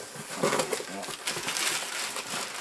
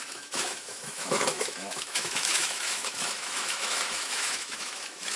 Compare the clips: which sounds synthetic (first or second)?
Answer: second